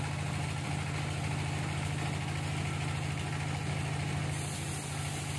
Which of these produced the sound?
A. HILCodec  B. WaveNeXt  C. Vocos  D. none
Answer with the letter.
D